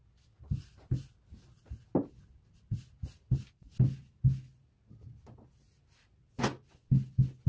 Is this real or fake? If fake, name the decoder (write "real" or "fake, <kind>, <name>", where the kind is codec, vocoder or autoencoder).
real